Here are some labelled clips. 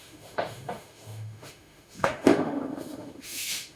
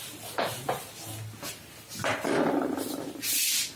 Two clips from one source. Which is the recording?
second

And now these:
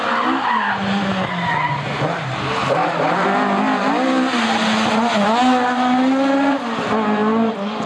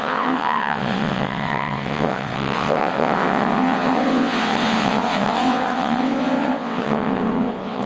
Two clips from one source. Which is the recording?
first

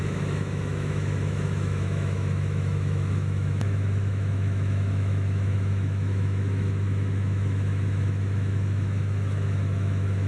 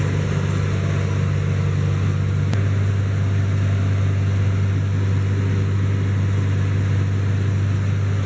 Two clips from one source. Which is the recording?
second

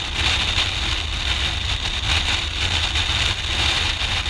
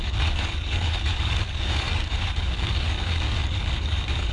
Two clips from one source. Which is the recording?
first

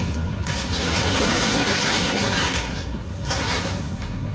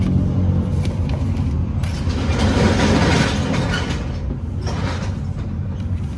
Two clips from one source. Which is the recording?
second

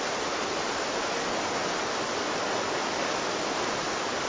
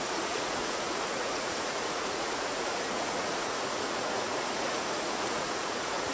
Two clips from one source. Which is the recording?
first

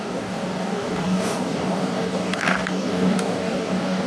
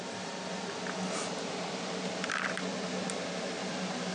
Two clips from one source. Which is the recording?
second